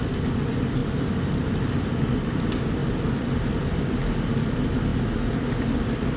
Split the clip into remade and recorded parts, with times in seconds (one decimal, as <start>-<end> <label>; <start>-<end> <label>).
0.0-6.2 recorded

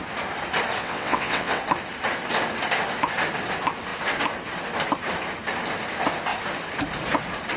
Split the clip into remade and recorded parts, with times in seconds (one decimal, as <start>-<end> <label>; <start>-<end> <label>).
0.0-0.8 recorded; 0.8-1.6 remade; 1.6-7.6 recorded

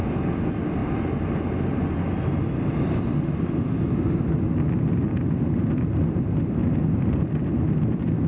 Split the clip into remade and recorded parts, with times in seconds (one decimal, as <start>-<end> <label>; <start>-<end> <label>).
0.0-8.3 recorded

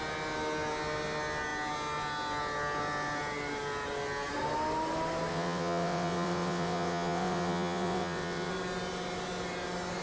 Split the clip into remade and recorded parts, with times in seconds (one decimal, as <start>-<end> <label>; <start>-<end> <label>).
0.0-5.3 recorded; 5.3-8.5 remade; 8.5-10.0 recorded

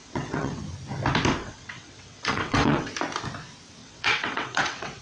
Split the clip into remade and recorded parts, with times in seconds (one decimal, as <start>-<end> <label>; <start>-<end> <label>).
0.0-0.6 remade; 0.6-1.4 recorded; 1.4-2.9 remade; 2.9-3.8 recorded; 3.8-5.0 remade

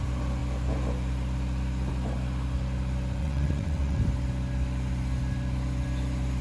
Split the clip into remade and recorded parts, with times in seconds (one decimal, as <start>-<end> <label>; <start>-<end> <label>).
0.0-3.2 recorded; 3.2-4.0 remade; 4.0-6.4 recorded

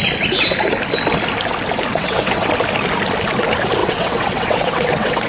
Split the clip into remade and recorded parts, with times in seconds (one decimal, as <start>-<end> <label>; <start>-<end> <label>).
0.0-1.9 recorded; 1.9-2.5 remade; 2.5-3.8 recorded; 3.8-5.3 remade